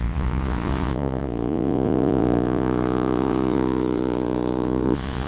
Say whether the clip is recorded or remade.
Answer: remade